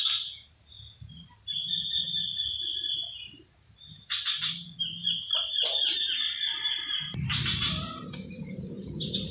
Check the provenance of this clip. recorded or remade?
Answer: remade